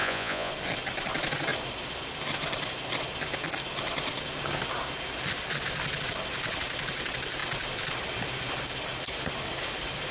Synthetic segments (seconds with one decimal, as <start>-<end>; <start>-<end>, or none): 0.0-0.5